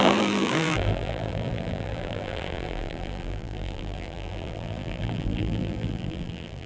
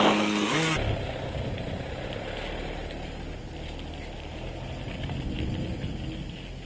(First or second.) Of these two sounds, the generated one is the first